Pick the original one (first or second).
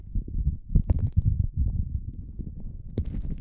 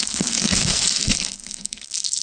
first